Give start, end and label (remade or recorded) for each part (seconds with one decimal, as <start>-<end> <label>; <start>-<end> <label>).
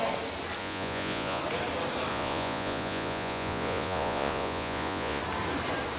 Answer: 0.0-0.6 recorded; 0.6-1.4 remade; 1.4-2.1 recorded; 2.1-5.2 remade; 5.2-6.0 recorded